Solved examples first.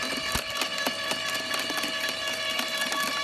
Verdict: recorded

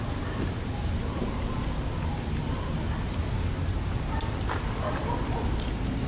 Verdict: recorded